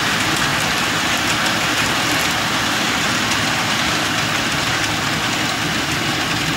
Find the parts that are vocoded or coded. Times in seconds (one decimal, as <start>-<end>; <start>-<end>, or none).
0.5-4.0